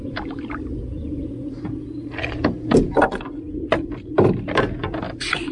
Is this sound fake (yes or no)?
no